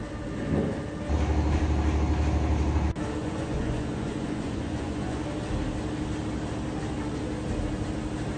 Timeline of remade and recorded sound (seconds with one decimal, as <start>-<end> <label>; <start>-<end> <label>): 0.0-3.2 recorded; 3.2-5.2 remade; 5.2-8.4 recorded